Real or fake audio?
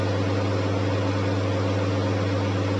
real